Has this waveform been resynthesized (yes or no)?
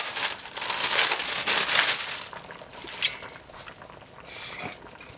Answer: no